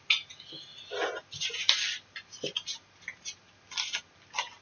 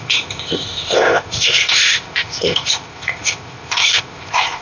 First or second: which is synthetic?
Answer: second